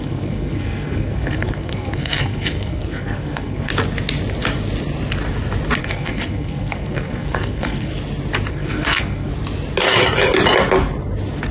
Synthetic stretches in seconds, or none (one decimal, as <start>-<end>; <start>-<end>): 0.0-3.7; 5.8-7.9; 8.5-9.3